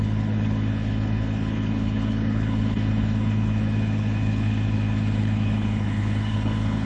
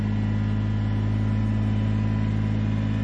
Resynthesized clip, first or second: first